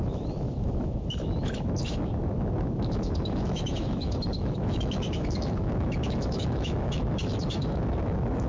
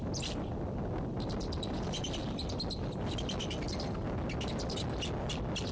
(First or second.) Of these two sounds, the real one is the second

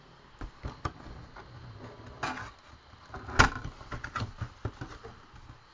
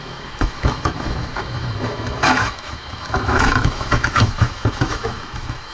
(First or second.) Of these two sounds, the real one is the first